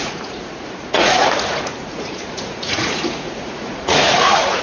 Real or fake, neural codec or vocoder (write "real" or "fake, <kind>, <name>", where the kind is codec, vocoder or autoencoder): fake, vocoder, Vocos